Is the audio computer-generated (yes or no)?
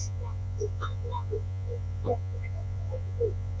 yes